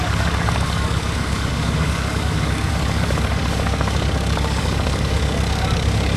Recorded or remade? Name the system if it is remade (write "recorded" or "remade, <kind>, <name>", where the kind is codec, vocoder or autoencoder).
remade, codec, DAC